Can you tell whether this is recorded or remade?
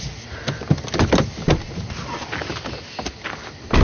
recorded